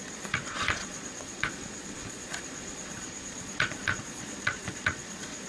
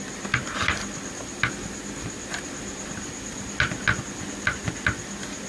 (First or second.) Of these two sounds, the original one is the second